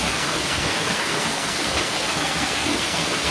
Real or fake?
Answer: fake